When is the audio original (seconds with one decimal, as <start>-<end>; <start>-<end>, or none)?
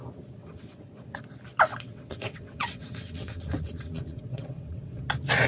0.0-0.4; 1.2-1.7; 5.0-5.5